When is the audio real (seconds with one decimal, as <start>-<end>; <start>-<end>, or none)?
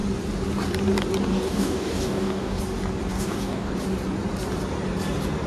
0.0-1.3; 2.6-3.1; 3.7-5.5